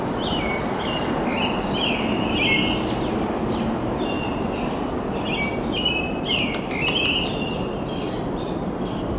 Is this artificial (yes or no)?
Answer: no